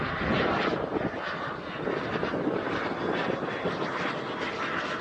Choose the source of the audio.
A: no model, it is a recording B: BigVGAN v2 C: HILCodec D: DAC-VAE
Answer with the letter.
A